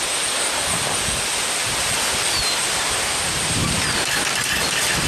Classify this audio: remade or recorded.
recorded